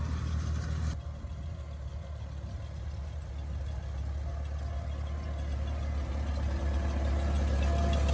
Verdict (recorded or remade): recorded